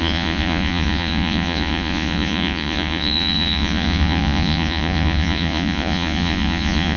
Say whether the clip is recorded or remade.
remade